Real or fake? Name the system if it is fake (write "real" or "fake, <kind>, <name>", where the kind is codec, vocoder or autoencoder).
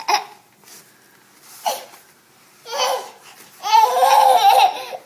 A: real